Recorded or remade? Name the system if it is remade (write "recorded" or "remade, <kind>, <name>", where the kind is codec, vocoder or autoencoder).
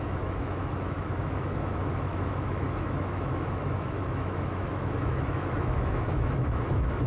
remade, autoencoder, DAC-VAE